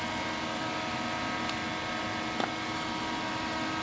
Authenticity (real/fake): real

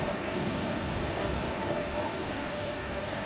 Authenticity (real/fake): fake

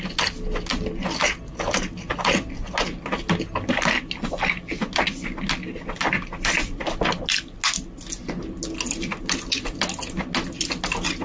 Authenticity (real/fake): real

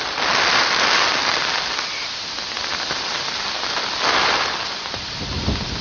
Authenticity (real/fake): real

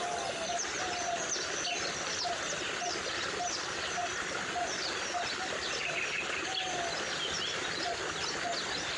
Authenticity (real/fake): real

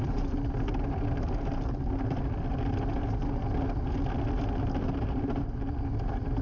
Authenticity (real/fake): real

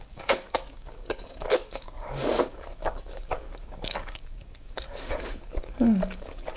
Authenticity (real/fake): fake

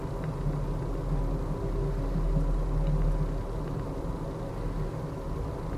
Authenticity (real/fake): real